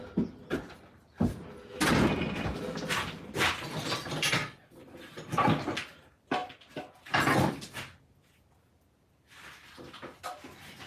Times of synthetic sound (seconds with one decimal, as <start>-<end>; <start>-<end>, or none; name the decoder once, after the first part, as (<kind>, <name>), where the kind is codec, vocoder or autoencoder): 6.4-7.0 (vocoder, BigVGAN v2)